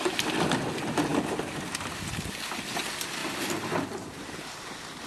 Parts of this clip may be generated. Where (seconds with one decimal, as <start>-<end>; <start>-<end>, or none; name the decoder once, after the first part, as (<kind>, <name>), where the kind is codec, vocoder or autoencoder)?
3.2-4.5 (vocoder, BigVGAN v2)